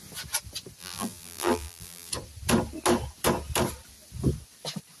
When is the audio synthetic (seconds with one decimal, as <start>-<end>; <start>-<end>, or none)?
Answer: 0.8-2.1